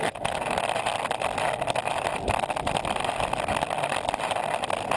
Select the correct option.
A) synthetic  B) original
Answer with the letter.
B